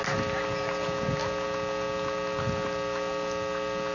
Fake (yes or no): no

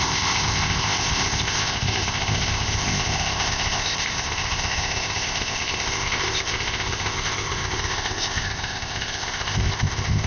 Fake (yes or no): yes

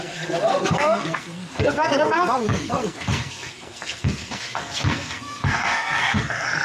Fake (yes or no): yes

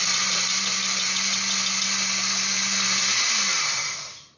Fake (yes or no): no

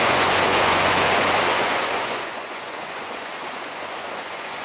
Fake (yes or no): yes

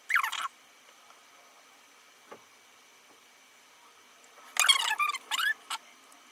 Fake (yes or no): no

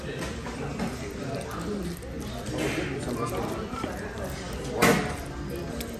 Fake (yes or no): no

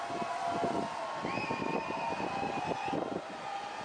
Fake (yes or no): no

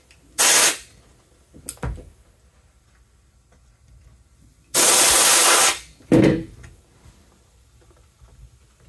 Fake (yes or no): no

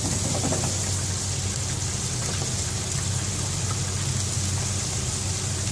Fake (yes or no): no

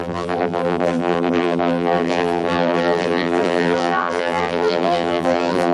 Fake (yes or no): yes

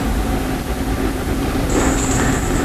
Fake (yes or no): no